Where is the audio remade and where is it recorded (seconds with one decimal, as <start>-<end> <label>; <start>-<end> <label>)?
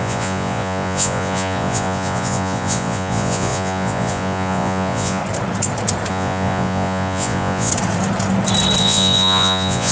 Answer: 0.0-5.2 remade; 5.2-6.1 recorded; 6.1-7.7 remade; 7.7-8.8 recorded; 8.8-9.9 remade